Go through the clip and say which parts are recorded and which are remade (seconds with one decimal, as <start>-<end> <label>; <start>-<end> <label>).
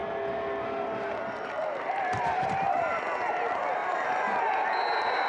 0.0-1.6 recorded; 1.6-2.8 remade; 2.8-3.8 recorded; 3.8-4.4 remade; 4.4-5.3 recorded